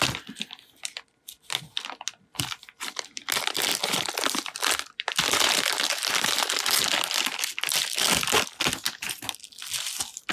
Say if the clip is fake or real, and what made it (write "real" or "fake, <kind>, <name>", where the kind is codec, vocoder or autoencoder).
real